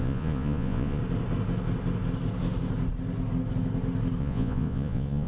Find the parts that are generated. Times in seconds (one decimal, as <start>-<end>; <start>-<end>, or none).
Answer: 0.0-1.0; 4.2-5.3